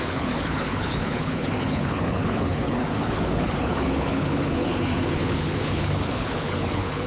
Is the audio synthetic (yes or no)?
yes